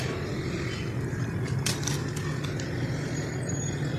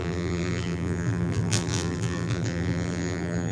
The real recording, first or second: first